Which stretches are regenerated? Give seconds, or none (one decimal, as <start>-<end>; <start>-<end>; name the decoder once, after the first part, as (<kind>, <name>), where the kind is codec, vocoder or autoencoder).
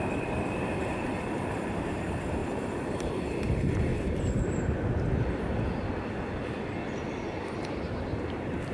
0.0-3.9 (vocoder, BigVGAN v2); 7.8-8.7